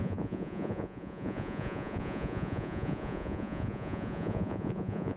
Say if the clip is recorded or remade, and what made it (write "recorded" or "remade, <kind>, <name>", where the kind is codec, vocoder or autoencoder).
remade, vocoder, Vocos